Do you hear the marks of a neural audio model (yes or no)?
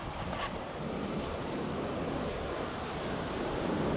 no